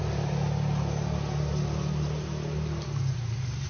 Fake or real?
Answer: real